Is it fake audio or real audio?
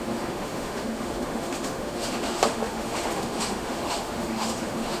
fake